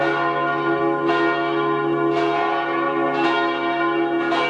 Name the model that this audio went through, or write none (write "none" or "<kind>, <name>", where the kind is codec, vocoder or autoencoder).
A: none